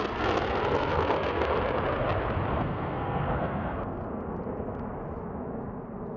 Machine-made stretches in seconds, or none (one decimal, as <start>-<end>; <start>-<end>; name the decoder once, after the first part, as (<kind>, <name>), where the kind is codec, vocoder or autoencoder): 0.9-1.5 (codec, SNAC); 2.5-4.3